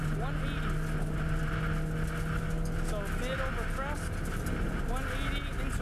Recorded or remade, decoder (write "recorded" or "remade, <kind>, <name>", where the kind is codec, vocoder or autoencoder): recorded